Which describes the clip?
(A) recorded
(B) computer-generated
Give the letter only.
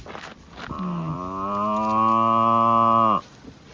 A